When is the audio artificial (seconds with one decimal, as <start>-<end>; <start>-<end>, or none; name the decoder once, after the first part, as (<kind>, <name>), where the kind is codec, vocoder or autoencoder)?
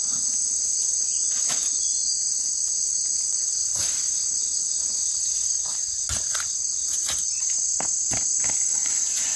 0.0-3.6 (vocoder, Vocos); 4.4-5.0; 8.7-9.4